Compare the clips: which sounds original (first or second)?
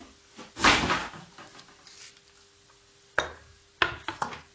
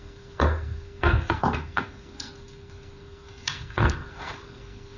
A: first